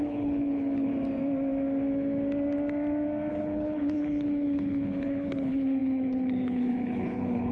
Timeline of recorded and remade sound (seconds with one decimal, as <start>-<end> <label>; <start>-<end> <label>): 0.0-0.9 remade; 0.9-3.3 recorded; 3.3-7.5 remade